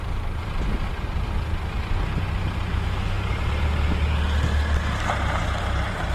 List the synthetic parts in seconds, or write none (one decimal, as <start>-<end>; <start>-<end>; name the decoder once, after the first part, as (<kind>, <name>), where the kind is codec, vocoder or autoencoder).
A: 2.7-3.4 (autoencoder, DAC-VAE)